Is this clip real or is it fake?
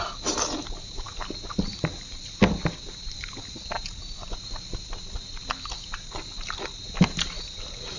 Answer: real